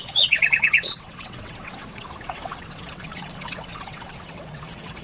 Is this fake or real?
fake